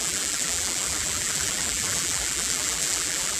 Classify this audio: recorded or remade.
remade